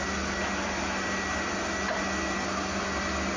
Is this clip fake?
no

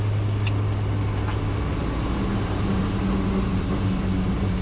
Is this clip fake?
no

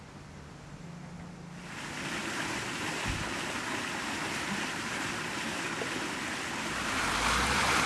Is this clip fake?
no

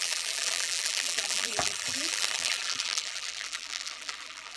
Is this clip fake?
yes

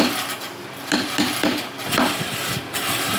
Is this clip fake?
no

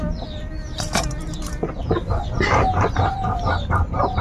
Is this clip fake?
no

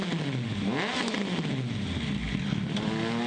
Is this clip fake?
no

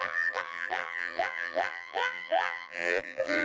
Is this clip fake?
yes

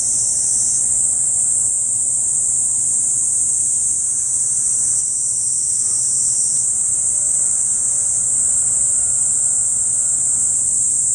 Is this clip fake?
yes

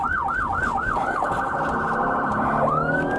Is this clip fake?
no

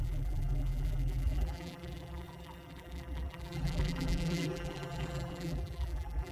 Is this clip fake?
yes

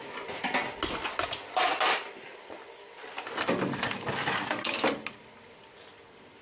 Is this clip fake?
no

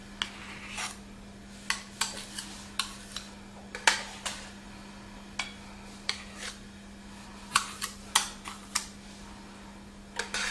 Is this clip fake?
no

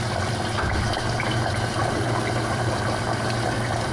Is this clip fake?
yes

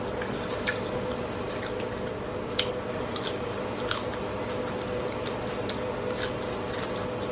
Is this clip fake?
no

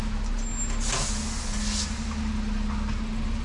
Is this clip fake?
no